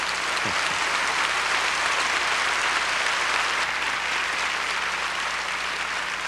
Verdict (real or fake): real